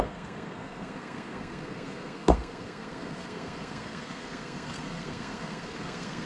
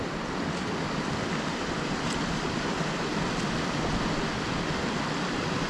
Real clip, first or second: second